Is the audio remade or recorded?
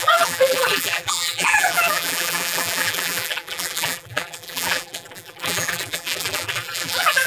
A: remade